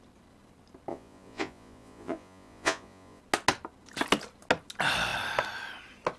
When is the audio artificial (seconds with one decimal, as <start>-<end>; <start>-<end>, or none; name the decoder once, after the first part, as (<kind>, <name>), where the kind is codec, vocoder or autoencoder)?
0.9-3.2 (vocoder, Vocos)